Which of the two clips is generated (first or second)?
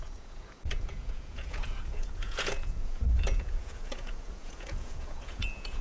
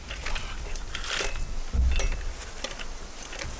first